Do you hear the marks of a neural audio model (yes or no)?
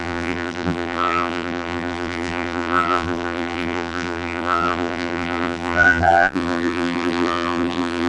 yes